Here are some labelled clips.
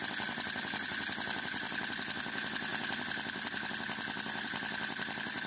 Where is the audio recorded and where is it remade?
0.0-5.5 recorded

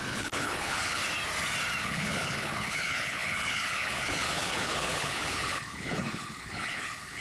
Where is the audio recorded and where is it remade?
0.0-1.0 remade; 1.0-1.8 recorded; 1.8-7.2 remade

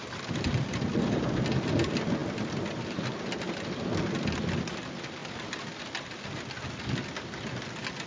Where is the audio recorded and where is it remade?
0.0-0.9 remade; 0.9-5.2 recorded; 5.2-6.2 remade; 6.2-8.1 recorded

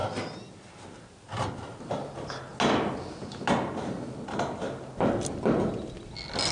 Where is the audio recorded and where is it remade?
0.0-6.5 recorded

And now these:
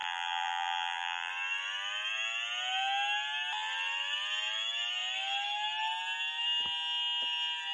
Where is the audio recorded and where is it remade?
0.0-1.3 remade; 1.3-7.7 recorded

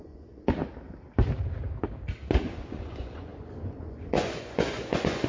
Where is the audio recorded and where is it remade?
0.0-0.6 remade; 0.6-2.4 recorded; 2.4-5.3 remade

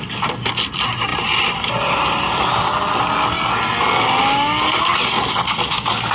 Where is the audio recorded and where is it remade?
0.0-6.1 recorded